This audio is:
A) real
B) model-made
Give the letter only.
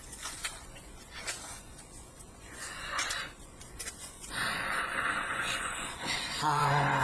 B